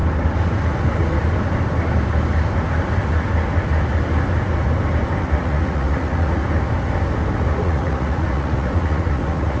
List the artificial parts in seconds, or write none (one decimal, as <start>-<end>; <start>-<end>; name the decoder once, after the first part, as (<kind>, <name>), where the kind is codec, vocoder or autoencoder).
5.2-6.4 (vocoder, Vocos); 7.5-9.6